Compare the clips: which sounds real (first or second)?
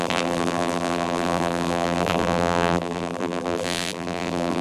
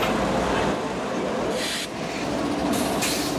second